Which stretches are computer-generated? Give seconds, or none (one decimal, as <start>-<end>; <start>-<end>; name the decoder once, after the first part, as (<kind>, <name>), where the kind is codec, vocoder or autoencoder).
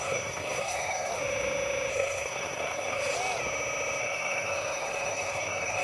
0.0-1.1 (codec, SNAC); 1.9-3.0; 4.0-5.8